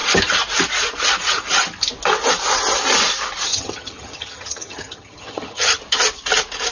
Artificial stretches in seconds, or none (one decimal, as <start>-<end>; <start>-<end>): 3.5-5.8